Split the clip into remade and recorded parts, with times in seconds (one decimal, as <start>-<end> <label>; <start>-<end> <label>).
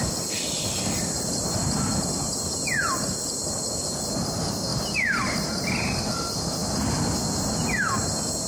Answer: 0.0-4.7 recorded; 4.7-6.0 remade; 6.0-8.5 recorded